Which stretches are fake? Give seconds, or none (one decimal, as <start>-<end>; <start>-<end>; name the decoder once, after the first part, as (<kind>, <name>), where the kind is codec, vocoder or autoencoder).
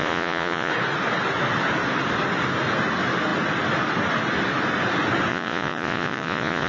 0.0-0.7 (vocoder, Vocos); 5.3-6.7